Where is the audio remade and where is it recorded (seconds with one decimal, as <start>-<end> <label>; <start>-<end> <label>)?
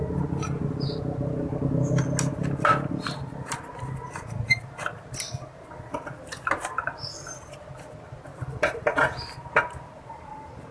0.0-8.3 recorded; 8.3-9.4 remade; 9.4-10.7 recorded